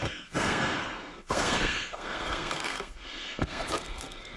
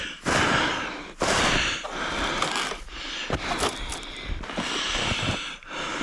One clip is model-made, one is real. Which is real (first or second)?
second